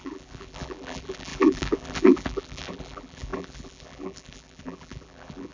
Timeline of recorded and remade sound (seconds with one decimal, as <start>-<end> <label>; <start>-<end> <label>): 0.0-5.5 remade